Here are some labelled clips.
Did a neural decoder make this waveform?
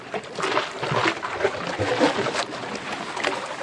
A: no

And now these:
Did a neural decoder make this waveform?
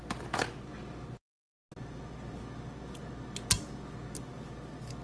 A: no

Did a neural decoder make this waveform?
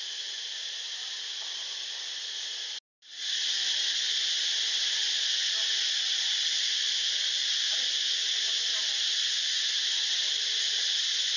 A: no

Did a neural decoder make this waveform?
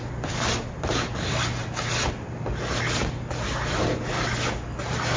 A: no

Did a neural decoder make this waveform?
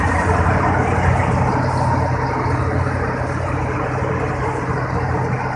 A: no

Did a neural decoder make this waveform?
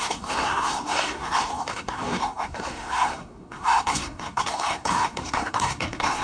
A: yes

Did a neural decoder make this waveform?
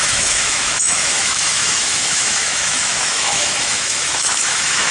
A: yes